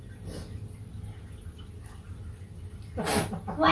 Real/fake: real